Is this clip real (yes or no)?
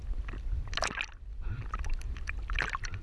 yes